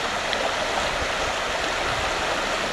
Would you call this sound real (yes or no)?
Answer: yes